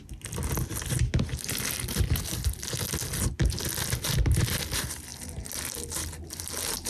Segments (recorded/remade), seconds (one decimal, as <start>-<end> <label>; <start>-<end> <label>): 0.0-6.9 recorded